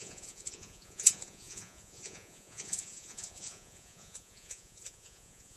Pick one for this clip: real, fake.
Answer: fake